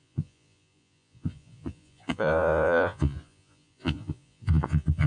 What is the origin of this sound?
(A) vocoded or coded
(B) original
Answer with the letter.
A